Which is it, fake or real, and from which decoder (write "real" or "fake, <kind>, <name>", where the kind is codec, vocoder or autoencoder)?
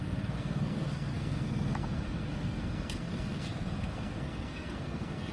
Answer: fake, codec, SNAC